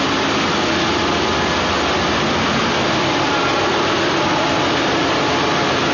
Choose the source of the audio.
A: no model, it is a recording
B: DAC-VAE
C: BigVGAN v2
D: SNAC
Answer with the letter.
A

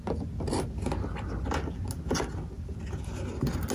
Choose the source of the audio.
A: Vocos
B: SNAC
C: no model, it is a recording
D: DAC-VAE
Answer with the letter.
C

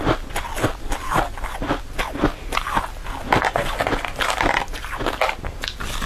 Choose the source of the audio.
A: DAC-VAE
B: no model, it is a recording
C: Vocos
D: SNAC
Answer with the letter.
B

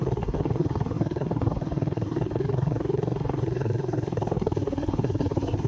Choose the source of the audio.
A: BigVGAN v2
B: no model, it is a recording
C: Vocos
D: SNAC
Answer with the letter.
D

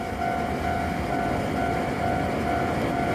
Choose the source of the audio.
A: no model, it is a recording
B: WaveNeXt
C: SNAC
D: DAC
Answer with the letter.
A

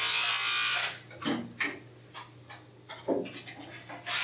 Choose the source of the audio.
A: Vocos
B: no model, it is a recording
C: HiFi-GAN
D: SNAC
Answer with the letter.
B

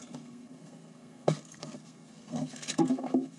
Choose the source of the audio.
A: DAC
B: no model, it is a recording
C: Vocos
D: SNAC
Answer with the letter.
D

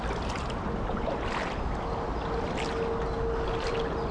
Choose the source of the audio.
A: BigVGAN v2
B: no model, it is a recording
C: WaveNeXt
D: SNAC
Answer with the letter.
B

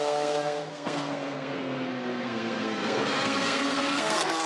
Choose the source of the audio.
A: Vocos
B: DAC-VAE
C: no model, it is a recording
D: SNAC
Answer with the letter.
D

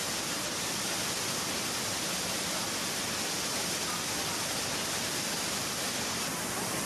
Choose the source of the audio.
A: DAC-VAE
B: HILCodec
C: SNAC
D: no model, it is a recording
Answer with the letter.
D